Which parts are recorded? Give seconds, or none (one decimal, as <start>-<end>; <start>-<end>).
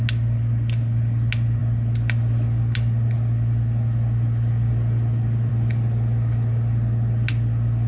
0.0-7.9